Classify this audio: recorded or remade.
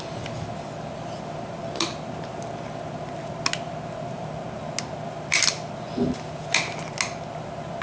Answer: recorded